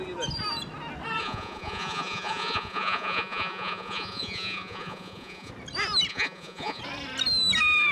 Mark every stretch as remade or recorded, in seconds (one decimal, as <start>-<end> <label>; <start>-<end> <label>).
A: 0.0-1.2 recorded; 1.2-5.5 remade; 5.5-6.1 recorded; 6.1-6.8 remade; 6.8-7.9 recorded